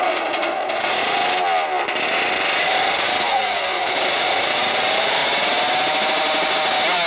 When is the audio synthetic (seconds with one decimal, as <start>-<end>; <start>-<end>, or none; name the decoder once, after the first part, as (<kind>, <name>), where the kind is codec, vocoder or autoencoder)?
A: 0.0-1.2 (vocoder, Vocos); 2.6-5.2